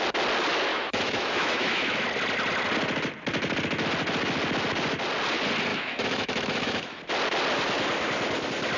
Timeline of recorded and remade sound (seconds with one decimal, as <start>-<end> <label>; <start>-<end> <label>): 0.0-0.7 recorded; 0.7-2.0 remade; 2.0-5.7 recorded; 5.7-7.0 remade; 7.0-8.8 recorded